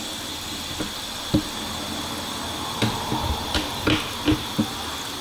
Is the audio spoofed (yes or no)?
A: no